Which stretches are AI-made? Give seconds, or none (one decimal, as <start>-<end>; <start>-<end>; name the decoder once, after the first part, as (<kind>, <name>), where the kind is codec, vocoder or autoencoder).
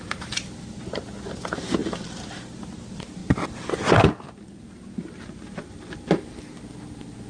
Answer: none